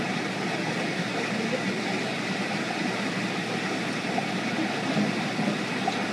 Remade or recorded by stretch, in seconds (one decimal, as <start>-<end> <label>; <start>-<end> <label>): 0.0-2.1 recorded; 2.1-3.1 remade; 3.1-6.1 recorded